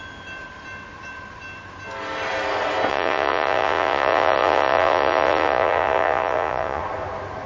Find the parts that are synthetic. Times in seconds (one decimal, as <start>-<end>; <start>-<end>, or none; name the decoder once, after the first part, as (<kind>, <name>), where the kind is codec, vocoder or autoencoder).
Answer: 2.9-6.8 (vocoder, Vocos)